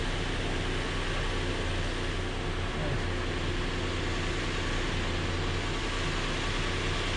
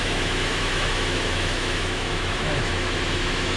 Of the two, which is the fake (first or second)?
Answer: second